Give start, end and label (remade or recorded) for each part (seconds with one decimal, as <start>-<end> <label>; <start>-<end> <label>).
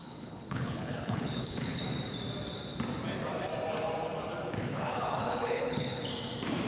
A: 0.0-1.8 remade; 1.8-4.7 recorded; 4.7-6.1 remade; 6.1-6.7 recorded